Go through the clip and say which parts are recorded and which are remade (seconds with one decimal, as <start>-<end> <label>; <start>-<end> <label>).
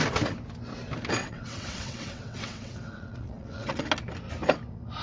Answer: 0.0-1.2 recorded; 1.2-3.8 remade; 3.8-5.0 recorded